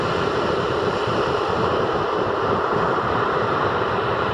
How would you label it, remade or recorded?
remade